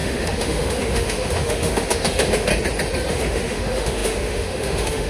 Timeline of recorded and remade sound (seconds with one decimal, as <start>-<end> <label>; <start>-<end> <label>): 0.0-2.5 remade; 2.5-3.1 recorded; 3.1-5.1 remade